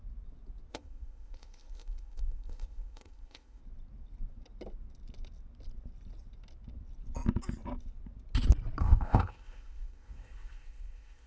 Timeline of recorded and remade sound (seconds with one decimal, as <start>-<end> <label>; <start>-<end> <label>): 0.0-0.7 recorded; 0.7-3.6 remade; 3.6-8.8 recorded; 8.8-11.3 remade